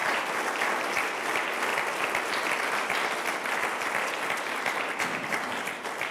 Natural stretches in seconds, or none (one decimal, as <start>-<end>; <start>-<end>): 0.0-6.1

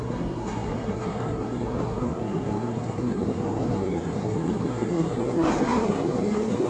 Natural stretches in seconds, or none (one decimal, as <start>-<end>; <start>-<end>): none

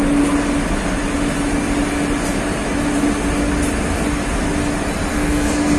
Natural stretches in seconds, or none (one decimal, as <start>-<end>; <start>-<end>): 0.0-5.1